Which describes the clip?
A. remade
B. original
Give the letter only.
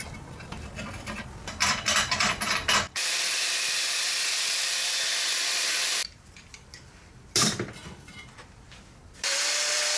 A